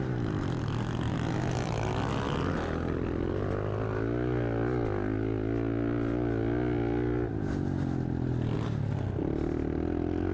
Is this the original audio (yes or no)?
yes